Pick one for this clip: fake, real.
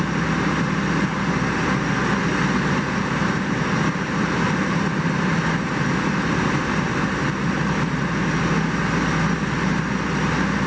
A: real